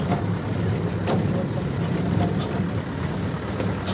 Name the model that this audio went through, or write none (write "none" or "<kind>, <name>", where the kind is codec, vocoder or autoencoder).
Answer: none